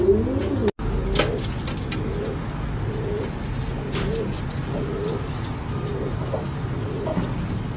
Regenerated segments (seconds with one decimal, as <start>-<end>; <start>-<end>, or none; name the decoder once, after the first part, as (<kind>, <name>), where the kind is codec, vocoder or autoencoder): none